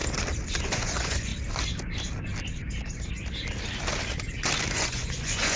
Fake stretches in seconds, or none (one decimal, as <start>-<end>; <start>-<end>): 0.6-1.3; 4.7-5.6